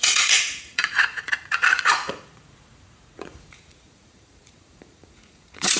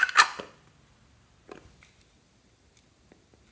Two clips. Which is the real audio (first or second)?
second